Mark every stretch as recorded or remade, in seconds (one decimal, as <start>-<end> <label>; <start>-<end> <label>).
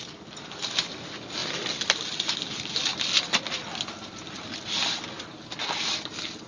0.0-6.5 recorded